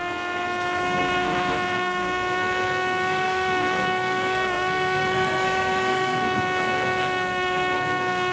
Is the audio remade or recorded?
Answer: remade